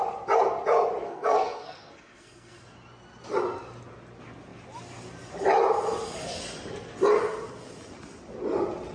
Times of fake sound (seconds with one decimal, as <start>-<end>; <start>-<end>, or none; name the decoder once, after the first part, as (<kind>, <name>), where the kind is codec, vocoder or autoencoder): 1.0-2.6 (codec, SNAC)